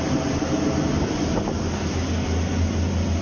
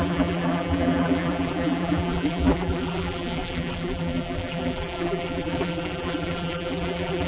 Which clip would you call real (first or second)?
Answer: first